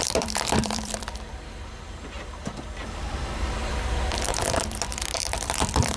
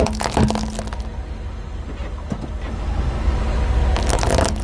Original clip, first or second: second